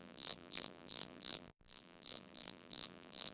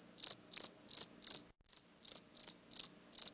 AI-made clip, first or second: first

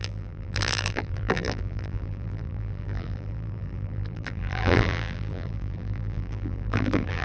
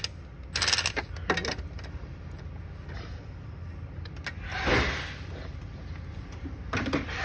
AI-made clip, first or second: first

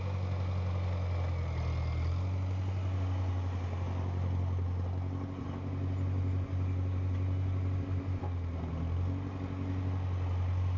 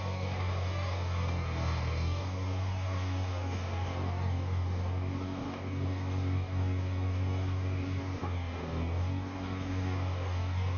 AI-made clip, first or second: second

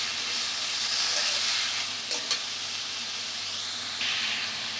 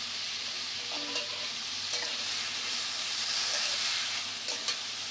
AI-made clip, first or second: second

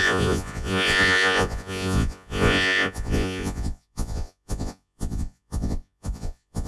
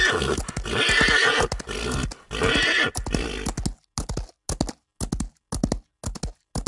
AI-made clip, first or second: first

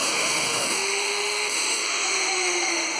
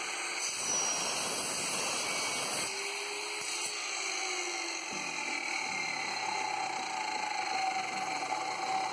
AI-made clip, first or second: first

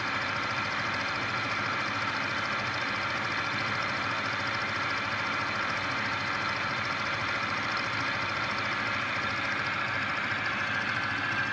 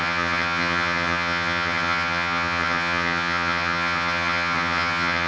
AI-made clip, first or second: second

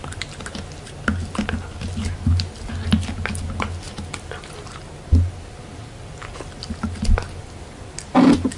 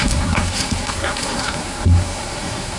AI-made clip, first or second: second